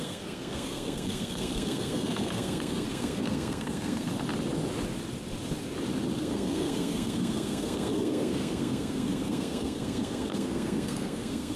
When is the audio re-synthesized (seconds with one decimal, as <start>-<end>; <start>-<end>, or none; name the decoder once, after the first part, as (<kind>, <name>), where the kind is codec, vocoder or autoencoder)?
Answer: 0.0-4.1 (codec, SNAC); 6.2-11.6